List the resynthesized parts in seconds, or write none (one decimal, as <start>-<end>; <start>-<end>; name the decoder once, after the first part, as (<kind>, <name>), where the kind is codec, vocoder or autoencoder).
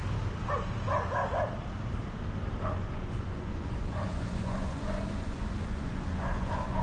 2.6-6.8 (vocoder, Vocos)